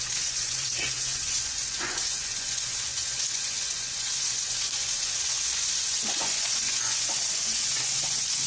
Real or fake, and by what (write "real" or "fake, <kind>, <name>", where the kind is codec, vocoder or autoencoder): fake, vocoder, Vocos